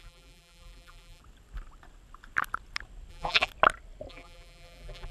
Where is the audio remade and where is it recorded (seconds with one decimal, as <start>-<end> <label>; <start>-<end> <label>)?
0.0-1.2 remade; 1.2-3.1 recorded; 3.1-3.5 remade; 3.5-4.1 recorded; 4.1-5.1 remade